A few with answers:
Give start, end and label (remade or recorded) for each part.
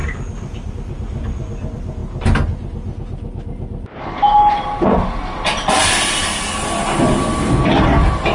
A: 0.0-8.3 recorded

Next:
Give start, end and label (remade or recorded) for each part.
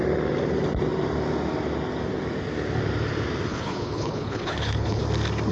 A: 0.0-3.5 recorded; 3.5-5.0 remade; 5.0-5.5 recorded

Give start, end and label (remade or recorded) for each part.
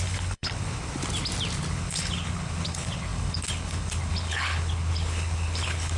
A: 0.0-1.0 remade; 1.0-1.7 recorded; 1.7-6.0 remade